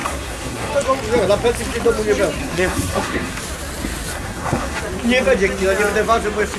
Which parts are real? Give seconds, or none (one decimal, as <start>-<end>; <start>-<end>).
0.7-2.4; 3.4-4.1; 4.8-6.6